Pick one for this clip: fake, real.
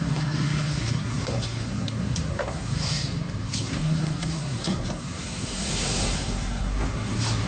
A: fake